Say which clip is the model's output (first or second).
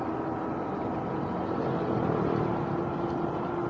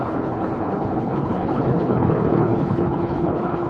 second